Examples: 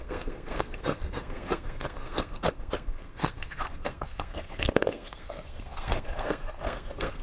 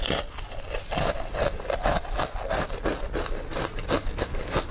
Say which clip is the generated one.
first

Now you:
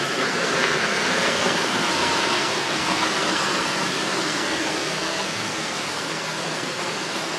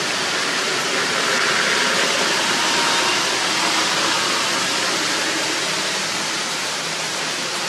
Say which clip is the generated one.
first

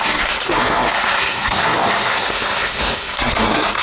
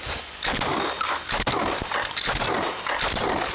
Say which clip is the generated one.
first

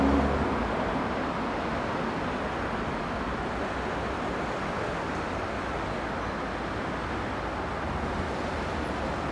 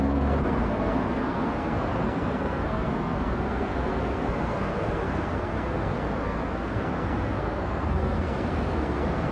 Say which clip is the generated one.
second